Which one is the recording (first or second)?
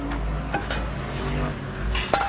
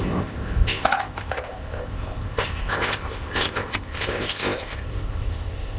first